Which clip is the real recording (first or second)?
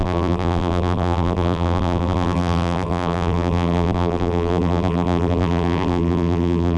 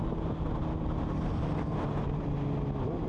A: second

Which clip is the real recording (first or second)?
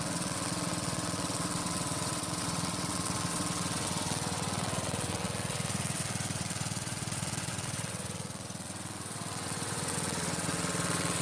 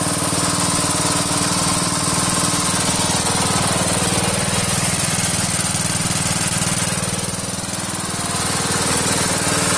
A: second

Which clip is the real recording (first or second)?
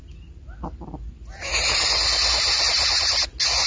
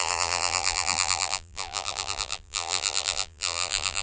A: first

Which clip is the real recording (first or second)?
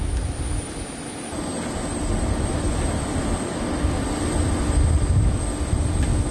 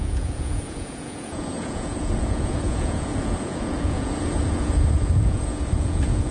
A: first